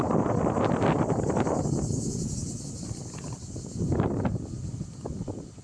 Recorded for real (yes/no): yes